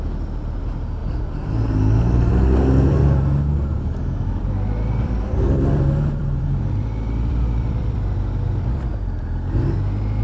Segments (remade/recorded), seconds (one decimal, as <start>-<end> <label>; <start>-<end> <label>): 0.0-3.7 recorded; 3.7-8.9 remade; 8.9-10.2 recorded